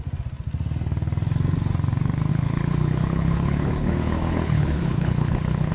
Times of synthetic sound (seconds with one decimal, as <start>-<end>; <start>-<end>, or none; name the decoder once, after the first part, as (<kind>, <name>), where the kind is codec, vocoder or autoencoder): 2.3-5.7 (codec, HILCodec)